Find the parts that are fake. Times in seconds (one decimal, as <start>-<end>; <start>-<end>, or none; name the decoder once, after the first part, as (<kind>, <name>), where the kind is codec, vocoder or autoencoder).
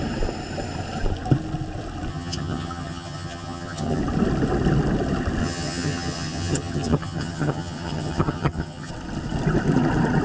2.1-4.0 (vocoder, HiFi-GAN); 5.4-8.9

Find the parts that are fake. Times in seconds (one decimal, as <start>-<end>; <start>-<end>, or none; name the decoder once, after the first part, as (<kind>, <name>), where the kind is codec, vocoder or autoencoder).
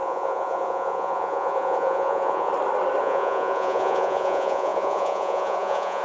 0.0-2.5 (vocoder, Vocos); 3.0-6.0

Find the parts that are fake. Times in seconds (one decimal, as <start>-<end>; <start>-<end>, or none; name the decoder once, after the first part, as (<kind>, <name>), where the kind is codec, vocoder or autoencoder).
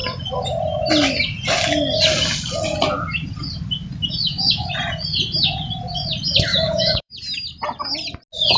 4.2-4.7 (codec, DAC); 6.5-7.1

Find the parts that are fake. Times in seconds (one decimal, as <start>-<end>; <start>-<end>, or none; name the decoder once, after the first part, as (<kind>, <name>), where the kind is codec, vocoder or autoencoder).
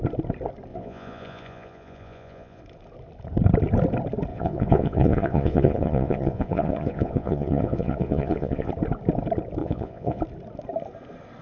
0.7-2.6 (vocoder, Vocos); 4.3-8.7; 9.6-10.2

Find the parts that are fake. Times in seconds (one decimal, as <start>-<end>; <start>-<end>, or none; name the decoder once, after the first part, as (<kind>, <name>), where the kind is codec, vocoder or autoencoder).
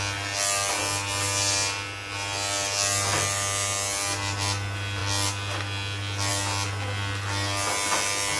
none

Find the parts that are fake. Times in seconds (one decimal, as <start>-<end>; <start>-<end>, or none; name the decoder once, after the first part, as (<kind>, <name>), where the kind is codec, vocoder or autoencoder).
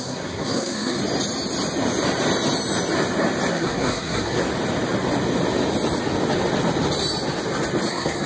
0.0-1.0 (codec, SNAC); 3.5-4.4; 7.9-8.3